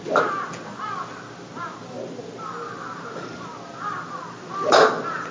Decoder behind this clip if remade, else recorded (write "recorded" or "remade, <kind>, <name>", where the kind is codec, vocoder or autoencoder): recorded